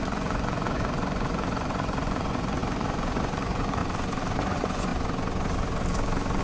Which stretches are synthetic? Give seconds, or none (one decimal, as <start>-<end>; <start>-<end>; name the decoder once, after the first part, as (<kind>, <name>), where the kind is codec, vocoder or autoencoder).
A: 0.0-3.8 (vocoder, Vocos); 4.4-4.9

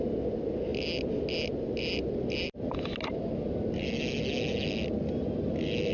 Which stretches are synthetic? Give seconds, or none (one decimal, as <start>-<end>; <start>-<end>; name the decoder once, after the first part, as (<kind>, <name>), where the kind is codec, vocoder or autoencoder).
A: none

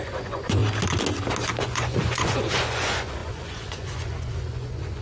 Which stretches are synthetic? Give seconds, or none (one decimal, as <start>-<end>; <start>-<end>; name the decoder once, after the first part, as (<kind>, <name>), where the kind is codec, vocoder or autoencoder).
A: 0.0-0.6 (vocoder, Vocos); 1.6-5.0

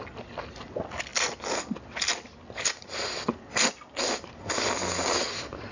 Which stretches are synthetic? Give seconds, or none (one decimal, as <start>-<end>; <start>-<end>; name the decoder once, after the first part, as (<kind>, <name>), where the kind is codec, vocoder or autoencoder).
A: none

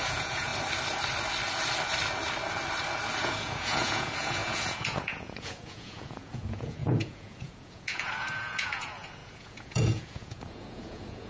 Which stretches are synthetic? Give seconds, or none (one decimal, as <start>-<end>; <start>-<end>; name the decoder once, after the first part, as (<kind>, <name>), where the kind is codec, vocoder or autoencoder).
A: 0.0-0.5 (vocoder, Vocos); 3.2-11.3